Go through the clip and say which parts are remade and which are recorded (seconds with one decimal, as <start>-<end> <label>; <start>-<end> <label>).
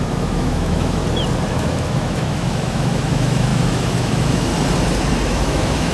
0.0-1.0 remade; 1.0-1.5 recorded; 1.5-4.5 remade; 4.5-5.3 recorded; 5.3-5.9 remade